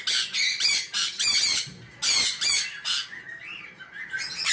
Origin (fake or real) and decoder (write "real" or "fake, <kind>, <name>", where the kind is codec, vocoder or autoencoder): real